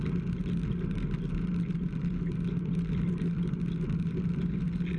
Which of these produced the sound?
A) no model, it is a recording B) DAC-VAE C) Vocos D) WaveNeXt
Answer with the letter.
A